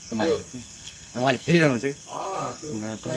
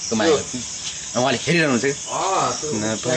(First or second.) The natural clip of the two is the second